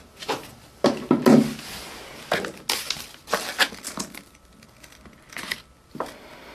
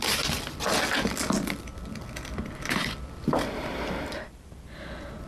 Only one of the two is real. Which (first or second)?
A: first